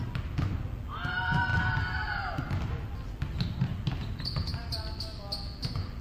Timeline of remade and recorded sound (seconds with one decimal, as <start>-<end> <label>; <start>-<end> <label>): 0.0-6.0 recorded